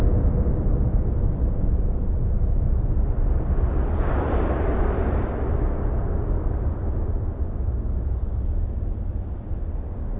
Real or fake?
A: real